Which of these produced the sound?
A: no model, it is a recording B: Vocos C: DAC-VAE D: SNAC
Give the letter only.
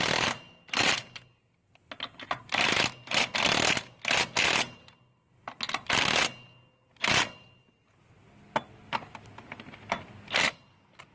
A